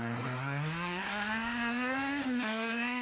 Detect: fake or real fake